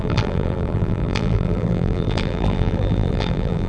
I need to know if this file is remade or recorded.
remade